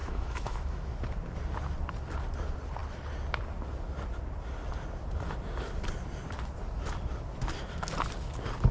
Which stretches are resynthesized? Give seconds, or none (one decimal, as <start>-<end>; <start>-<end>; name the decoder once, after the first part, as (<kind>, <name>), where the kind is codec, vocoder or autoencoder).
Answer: 0.0-1.0 (autoencoder, DAC-VAE)